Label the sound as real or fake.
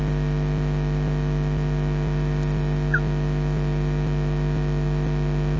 real